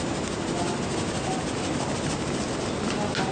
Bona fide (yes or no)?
yes